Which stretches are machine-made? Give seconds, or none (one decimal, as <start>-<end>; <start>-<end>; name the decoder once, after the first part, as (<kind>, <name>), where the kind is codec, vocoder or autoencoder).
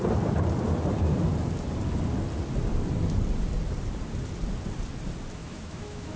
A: 5.4-6.2 (autoencoder, DAC-VAE)